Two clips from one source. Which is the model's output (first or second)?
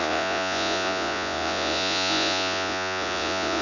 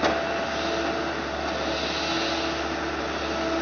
first